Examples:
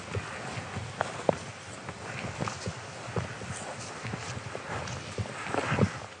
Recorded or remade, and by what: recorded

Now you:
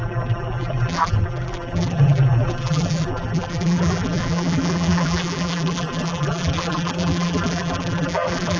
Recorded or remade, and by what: remade, vocoder, BigVGAN v2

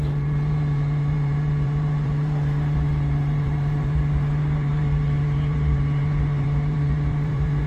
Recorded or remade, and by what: remade, vocoder, BigVGAN v2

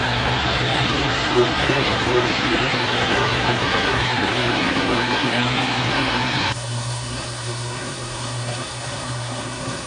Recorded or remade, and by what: remade, codec, SNAC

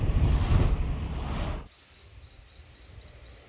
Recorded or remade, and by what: recorded